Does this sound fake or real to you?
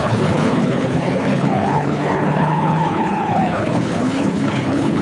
fake